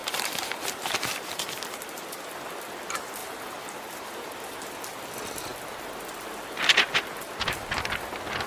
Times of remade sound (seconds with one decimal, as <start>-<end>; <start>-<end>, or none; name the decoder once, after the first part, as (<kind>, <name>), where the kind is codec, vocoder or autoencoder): 0.0-2.5 (vocoder, BigVGAN v2); 3.2-4.7